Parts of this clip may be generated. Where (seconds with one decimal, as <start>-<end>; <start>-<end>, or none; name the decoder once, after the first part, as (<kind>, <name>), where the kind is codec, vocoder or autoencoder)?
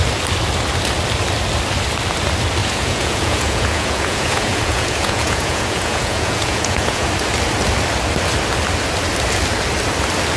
2.6-7.1 (vocoder, Vocos)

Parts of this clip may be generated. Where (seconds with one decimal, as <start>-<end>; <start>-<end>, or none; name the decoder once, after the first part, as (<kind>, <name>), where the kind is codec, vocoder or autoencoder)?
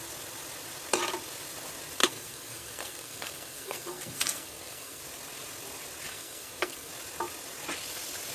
2.0-5.0 (codec, SNAC); 6.1-6.9